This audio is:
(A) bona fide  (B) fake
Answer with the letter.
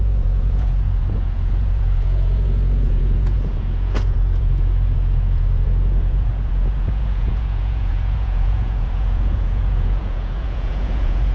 B